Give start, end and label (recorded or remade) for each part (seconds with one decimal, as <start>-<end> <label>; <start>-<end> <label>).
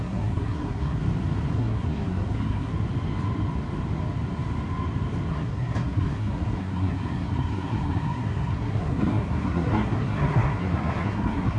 0.0-1.0 remade; 1.0-1.5 recorded; 1.5-2.7 remade; 2.7-5.3 recorded; 5.3-11.6 remade